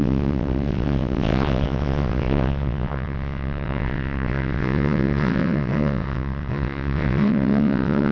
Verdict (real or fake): fake